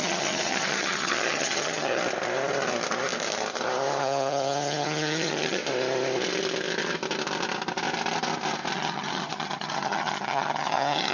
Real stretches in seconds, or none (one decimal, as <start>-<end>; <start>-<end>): 2.0-4.0; 5.6-8.7